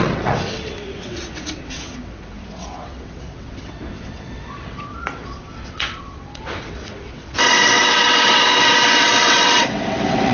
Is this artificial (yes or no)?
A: yes